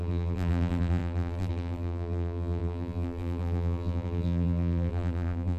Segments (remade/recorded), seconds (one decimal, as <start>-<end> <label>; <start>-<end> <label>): 0.0-5.6 remade